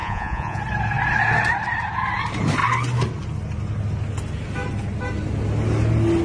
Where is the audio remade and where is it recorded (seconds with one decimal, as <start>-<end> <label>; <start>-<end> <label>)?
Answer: 0.0-0.6 remade; 0.6-6.2 recorded